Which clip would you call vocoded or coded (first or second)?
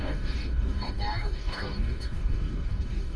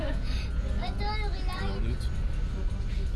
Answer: first